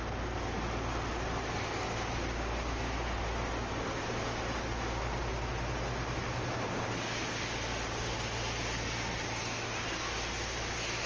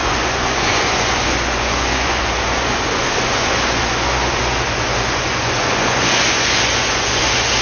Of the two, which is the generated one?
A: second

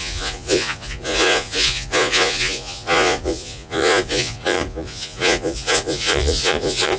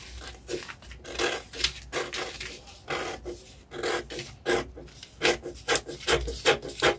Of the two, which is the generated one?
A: first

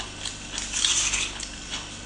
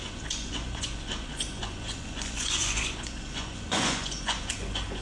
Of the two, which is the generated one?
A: second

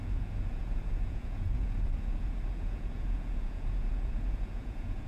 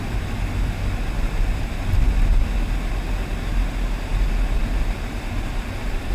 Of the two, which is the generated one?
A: first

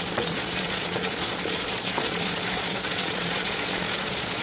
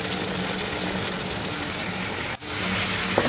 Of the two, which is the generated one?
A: first